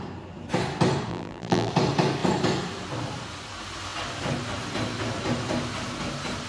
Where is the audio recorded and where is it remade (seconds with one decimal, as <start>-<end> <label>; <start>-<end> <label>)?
0.0-1.1 recorded; 1.1-1.7 remade; 1.7-6.5 recorded